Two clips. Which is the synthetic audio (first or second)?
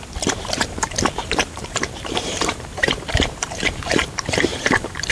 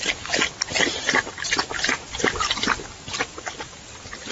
first